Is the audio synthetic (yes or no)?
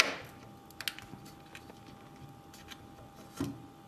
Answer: no